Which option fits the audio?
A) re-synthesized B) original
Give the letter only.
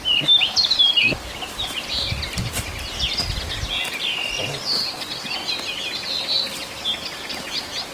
B